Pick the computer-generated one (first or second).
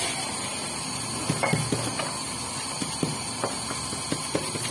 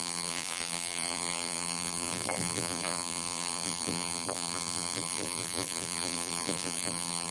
second